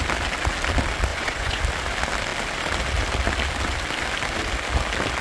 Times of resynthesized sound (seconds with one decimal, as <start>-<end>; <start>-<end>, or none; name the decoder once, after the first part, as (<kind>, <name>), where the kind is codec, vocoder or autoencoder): 1.1-1.6 (vocoder, Vocos)

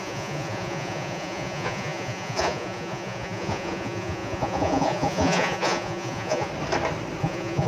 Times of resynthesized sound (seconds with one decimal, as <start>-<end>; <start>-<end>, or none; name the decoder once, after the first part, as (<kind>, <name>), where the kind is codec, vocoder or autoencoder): 0.0-6.5 (vocoder, Vocos); 7.2-7.7

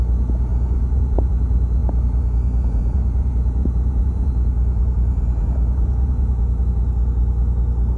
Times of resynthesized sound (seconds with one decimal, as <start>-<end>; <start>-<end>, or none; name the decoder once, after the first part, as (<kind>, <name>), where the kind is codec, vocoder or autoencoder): 0.5-1.3 (vocoder, Vocos); 1.8-6.6